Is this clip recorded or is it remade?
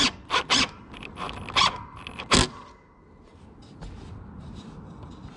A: recorded